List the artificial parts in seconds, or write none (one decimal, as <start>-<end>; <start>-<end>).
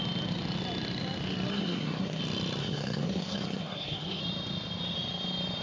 1.5-2.2; 2.6-4.2